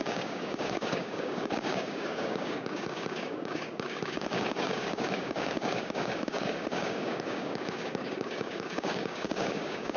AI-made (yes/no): yes